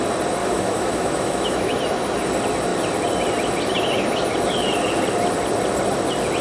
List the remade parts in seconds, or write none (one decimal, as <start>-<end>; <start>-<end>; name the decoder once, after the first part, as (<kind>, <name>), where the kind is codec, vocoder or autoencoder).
0.4-1.8 (autoencoder, DAC-VAE)